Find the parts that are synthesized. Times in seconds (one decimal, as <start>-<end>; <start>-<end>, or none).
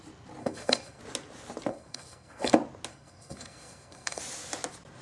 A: 0.4-1.0; 1.7-2.5; 2.9-4.2